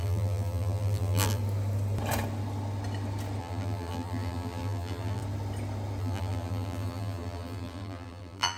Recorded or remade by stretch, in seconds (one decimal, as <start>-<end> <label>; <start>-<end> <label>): 0.0-1.4 remade; 1.4-3.4 recorded; 3.4-5.2 remade; 5.2-6.0 recorded; 6.0-8.6 remade